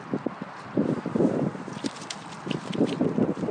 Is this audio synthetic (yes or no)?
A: no